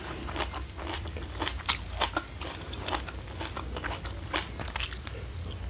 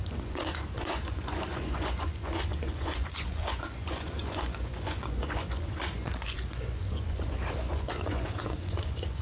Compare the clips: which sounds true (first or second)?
first